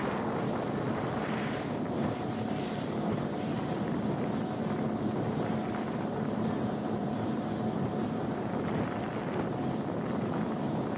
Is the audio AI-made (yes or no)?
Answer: no